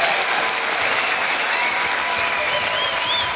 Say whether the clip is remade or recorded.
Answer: recorded